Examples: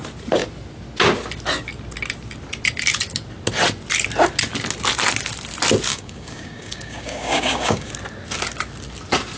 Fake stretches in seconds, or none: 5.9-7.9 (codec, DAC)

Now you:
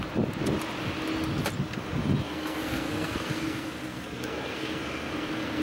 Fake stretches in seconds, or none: 2.2-5.6 (codec, SNAC)

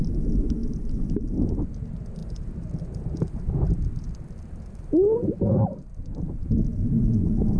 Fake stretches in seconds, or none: none

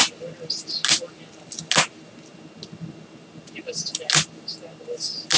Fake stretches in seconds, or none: none

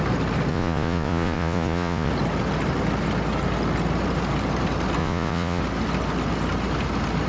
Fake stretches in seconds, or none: 0.5-2.1 (vocoder, Vocos); 5.0-5.6

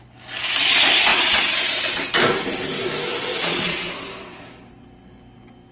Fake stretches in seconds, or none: 1.1-1.8 (vocoder, Vocos); 3.3-3.9

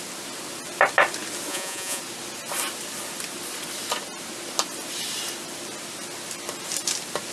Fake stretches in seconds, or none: 1.5-2.0 (vocoder, Vocos)